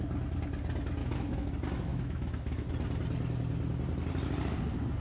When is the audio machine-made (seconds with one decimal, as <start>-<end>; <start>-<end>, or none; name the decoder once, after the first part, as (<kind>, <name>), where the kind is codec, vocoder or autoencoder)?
1.0-1.5 (autoencoder, DAC-VAE); 1.9-2.7